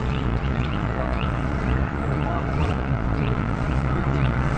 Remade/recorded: remade